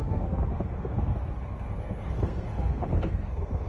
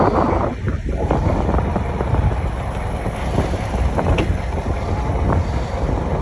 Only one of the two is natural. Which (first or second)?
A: second